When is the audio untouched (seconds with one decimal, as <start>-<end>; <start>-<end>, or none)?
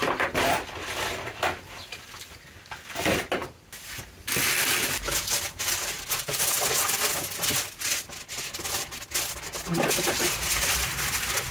0.0-11.5